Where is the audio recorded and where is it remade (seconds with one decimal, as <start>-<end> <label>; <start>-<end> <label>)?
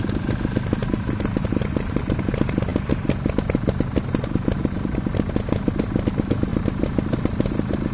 0.0-0.8 recorded; 0.8-2.0 remade; 2.0-6.5 recorded; 6.5-7.9 remade